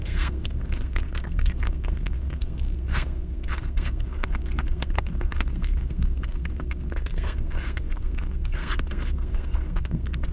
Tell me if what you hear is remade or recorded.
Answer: remade